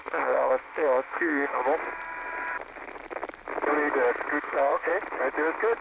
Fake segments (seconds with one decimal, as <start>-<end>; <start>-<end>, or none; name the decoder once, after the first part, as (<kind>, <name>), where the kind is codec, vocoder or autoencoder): 0.0-1.6 (codec, ZipCodec); 4.4-4.9